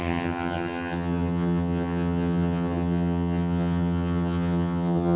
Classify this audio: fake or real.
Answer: fake